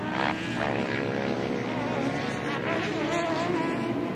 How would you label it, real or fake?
real